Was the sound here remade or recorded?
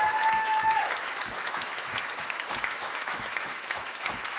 remade